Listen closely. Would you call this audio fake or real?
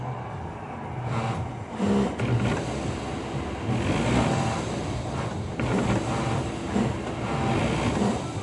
real